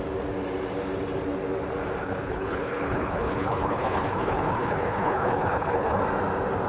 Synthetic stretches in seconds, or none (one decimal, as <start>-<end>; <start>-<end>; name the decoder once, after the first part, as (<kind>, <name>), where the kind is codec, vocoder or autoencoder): 2.0-6.0 (codec, HILCodec)